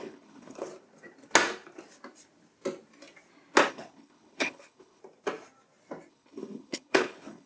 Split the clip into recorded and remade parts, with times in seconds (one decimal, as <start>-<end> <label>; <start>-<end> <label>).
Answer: 0.0-0.7 remade; 0.7-3.7 recorded; 3.7-5.0 remade; 5.0-6.1 recorded; 6.1-7.5 remade